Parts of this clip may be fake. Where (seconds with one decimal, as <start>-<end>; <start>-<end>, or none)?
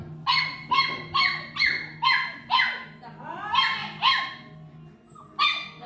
none